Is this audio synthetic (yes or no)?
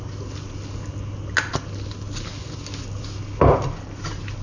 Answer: no